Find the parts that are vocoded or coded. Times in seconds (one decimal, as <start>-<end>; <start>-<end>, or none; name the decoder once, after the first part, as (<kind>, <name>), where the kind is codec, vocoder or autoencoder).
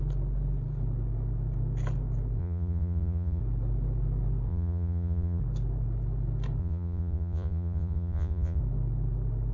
2.4-3.4 (vocoder, Vocos); 4.5-5.4; 6.6-8.6